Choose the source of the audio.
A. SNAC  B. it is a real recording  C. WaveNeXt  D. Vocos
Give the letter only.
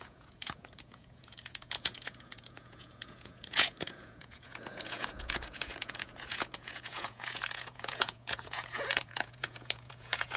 D